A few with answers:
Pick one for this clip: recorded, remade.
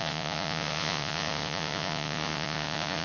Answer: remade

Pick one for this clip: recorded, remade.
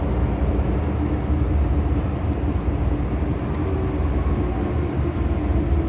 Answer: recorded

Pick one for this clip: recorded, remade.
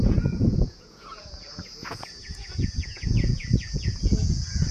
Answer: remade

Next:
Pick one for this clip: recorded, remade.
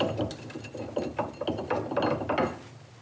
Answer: recorded